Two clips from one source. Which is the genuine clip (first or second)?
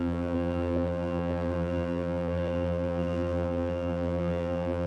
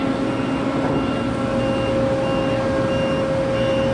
second